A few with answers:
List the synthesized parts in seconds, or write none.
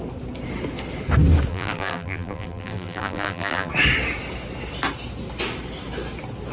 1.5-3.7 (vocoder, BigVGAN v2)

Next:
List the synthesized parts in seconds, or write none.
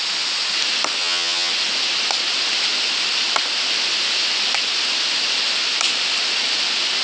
1.0-1.5 (vocoder, HiFi-GAN)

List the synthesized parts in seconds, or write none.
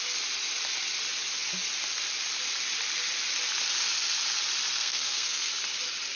4.7-5.5 (codec, SNAC)